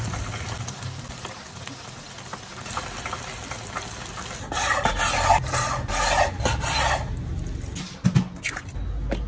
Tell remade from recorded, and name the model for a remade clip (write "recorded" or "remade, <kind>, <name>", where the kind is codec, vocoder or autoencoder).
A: recorded